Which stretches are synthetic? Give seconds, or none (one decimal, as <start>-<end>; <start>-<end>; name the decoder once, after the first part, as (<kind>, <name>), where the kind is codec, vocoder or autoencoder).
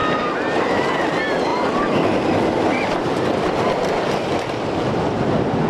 0.0-0.7 (vocoder, BigVGAN v2); 1.5-4.0